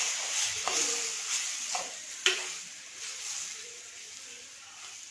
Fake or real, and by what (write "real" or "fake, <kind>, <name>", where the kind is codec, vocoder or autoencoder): real